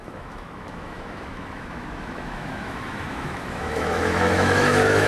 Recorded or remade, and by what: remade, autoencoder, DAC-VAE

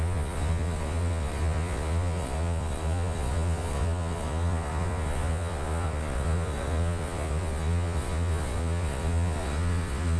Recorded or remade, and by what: remade, vocoder, Vocos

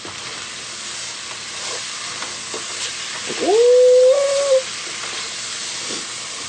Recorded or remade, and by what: recorded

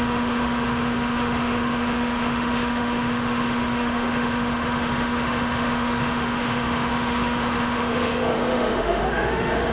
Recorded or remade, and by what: remade, autoencoder, DAC-VAE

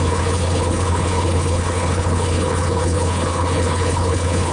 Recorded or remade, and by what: remade, codec, HILCodec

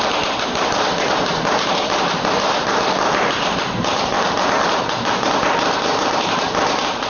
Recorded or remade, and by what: remade, vocoder, BigVGAN v2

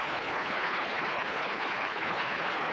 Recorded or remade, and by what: remade, codec, HILCodec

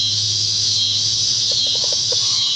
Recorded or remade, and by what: remade, autoencoder, DAC-VAE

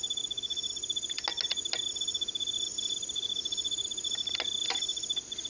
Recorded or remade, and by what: recorded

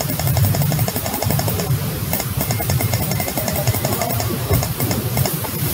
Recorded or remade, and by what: remade, vocoder, BigVGAN v2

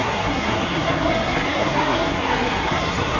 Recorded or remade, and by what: remade, codec, SNAC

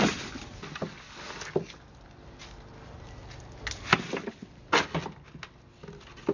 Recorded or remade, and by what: recorded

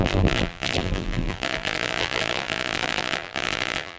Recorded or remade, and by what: remade, vocoder, BigVGAN v2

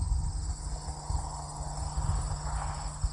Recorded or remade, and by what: recorded